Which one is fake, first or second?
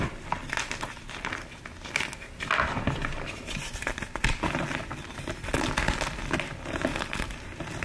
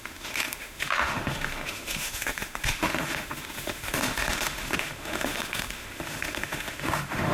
second